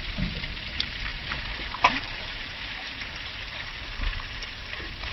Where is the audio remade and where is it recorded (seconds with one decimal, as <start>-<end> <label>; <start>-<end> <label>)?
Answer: 0.0-5.1 remade

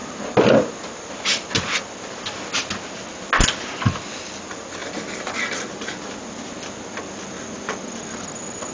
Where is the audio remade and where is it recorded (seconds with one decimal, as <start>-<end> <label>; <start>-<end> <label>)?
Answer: 0.0-1.8 remade; 1.8-8.7 recorded

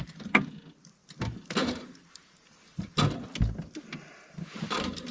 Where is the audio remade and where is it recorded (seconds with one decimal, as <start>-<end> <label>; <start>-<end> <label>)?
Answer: 0.0-1.0 recorded; 1.0-3.0 remade; 3.0-5.1 recorded

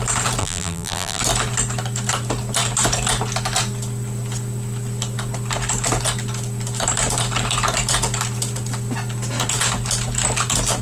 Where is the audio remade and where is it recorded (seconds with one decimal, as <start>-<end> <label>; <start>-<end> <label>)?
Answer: 0.0-0.4 recorded; 0.4-1.2 remade; 1.2-10.8 recorded

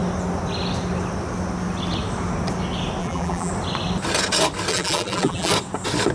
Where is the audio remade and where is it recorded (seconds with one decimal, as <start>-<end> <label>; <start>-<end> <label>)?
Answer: 0.0-3.0 recorded; 3.0-3.5 remade; 3.5-4.7 recorded; 4.7-5.5 remade; 5.5-6.1 recorded